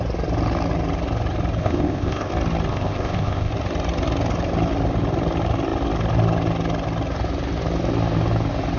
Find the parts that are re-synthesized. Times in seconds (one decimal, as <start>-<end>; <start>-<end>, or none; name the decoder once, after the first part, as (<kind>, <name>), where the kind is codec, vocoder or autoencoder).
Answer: 1.6-2.3 (codec, ZipCodec); 2.7-3.5